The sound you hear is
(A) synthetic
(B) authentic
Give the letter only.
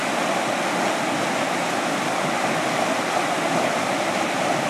B